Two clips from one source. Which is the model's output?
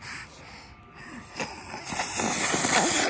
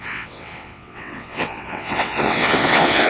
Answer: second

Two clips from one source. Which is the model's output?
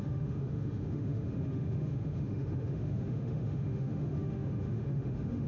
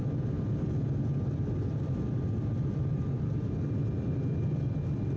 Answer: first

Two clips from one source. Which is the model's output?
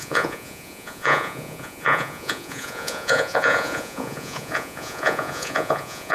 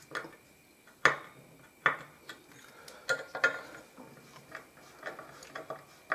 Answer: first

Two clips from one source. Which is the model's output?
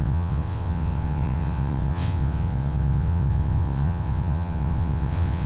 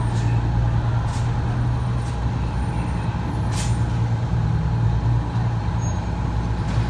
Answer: first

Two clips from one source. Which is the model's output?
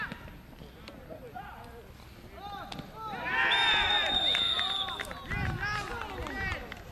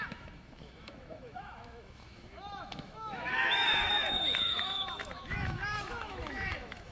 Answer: second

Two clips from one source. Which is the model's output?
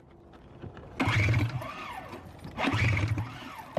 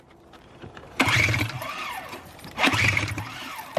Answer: second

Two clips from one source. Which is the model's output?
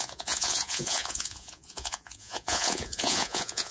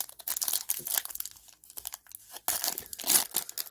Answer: first